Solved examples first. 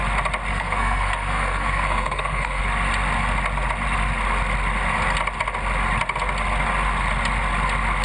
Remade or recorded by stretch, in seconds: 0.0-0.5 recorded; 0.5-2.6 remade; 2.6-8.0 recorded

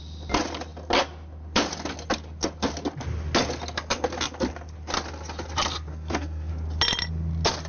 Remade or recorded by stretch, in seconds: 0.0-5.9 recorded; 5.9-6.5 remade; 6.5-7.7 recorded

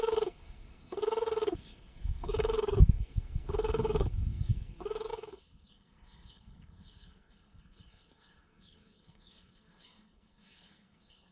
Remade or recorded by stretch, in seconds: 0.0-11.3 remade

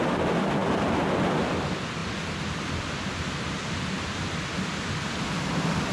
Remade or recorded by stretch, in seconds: 0.0-5.9 recorded

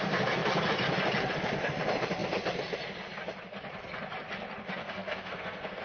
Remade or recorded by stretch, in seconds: 0.0-4.8 recorded; 4.8-5.8 remade